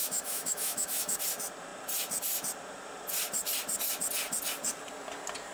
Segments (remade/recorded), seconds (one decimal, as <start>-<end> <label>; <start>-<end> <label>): 0.0-1.2 remade; 1.2-5.5 recorded